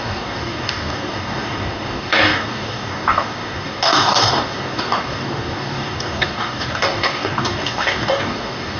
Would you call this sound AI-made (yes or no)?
yes